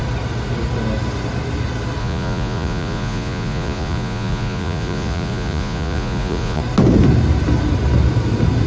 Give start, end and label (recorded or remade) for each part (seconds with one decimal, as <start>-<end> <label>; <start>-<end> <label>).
0.0-2.0 recorded; 2.0-6.6 remade; 6.6-8.7 recorded